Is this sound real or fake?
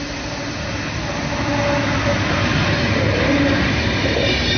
real